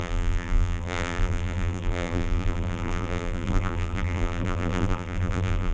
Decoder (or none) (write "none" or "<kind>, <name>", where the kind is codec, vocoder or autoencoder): vocoder, BigVGAN v2